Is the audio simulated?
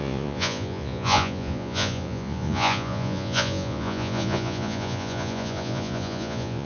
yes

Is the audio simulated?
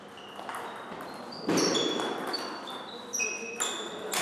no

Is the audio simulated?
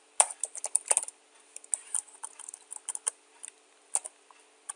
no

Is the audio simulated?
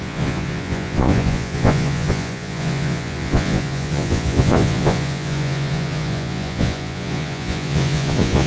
yes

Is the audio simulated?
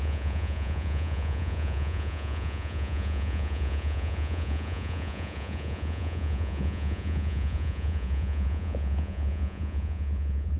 yes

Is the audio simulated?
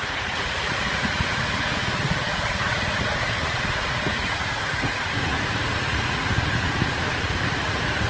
yes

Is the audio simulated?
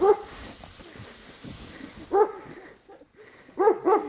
no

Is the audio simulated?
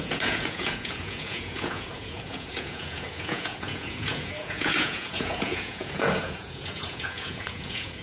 yes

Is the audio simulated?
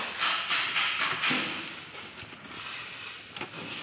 no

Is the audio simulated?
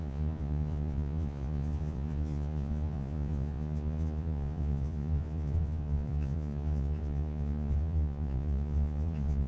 yes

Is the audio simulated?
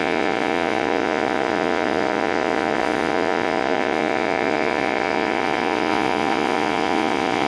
yes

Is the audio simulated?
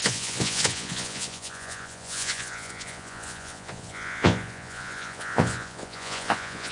yes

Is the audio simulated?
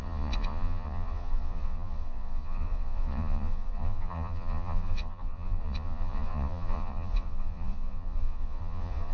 yes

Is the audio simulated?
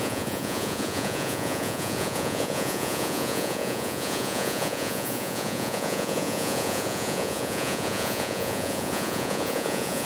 yes